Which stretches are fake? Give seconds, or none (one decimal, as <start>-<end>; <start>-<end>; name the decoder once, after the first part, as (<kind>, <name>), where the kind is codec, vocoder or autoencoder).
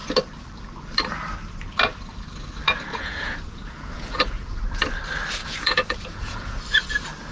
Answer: 2.9-4.6 (vocoder, Vocos); 5.4-6.6